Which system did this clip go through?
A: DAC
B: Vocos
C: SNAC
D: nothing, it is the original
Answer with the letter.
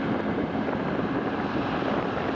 D